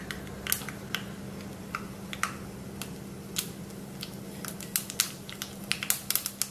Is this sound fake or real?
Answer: real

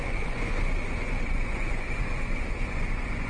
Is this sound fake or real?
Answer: fake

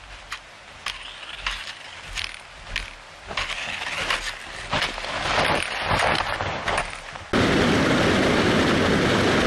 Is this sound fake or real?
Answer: real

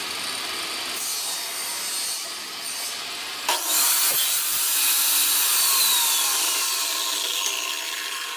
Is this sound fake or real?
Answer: real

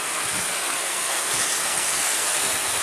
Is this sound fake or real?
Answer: fake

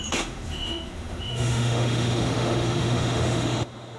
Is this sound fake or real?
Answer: fake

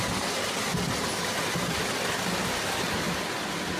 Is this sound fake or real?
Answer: real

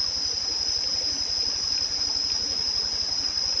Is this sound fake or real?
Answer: real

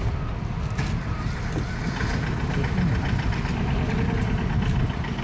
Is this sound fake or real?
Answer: real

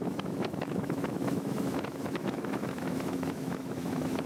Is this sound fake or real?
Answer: fake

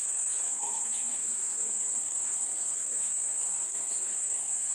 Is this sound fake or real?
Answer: fake